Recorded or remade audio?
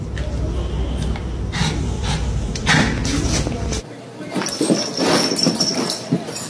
remade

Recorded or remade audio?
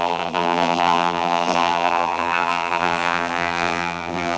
remade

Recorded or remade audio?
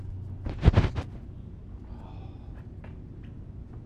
recorded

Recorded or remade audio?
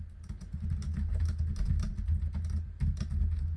recorded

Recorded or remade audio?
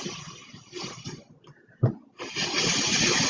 recorded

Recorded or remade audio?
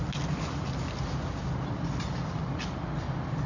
recorded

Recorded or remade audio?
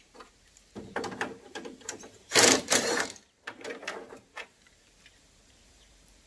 remade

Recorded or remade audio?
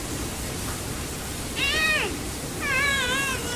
remade